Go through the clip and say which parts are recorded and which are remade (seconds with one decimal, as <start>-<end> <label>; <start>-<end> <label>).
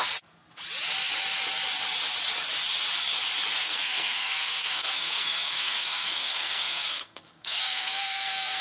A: 0.0-3.5 recorded; 3.5-8.6 remade